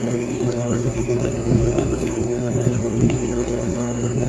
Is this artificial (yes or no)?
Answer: yes